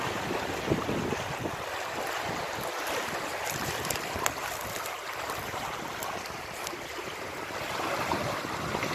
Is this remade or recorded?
recorded